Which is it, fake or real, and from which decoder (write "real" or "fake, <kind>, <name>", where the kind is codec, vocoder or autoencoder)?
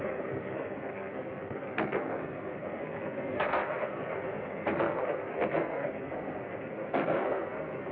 fake, codec, SNAC